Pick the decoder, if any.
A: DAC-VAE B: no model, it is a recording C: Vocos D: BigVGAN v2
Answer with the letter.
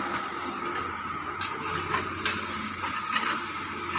B